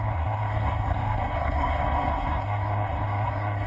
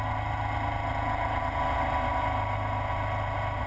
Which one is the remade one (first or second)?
first